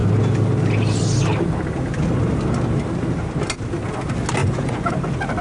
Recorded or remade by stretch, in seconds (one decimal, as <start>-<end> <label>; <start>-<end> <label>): 0.0-4.4 recorded; 4.4-4.9 remade; 4.9-5.4 recorded